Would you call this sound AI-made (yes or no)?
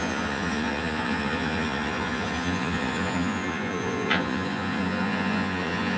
yes